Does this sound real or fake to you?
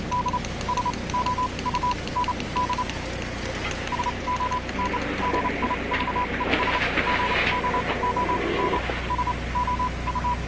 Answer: real